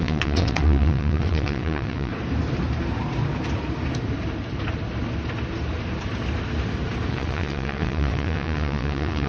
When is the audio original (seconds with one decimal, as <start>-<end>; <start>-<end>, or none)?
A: 2.1-7.1